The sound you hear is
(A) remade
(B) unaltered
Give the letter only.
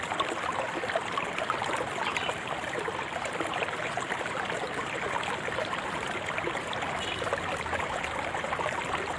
B